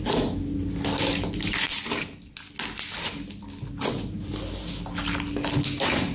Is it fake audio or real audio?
real